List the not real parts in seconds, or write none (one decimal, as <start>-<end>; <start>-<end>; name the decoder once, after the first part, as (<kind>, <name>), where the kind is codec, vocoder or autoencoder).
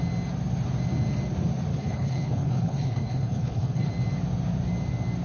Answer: 1.7-3.9 (codec, HILCodec)